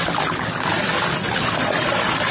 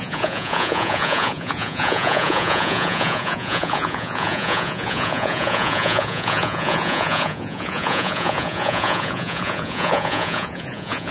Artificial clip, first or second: second